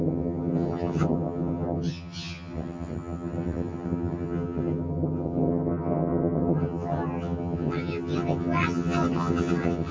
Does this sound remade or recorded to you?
remade